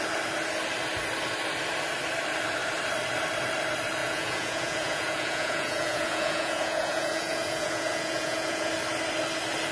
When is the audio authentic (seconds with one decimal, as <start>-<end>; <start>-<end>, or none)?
0.0-4.0; 8.7-9.7